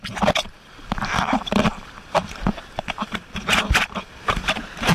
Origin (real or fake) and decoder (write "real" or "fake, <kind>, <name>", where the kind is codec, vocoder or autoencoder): fake, vocoder, BigVGAN v2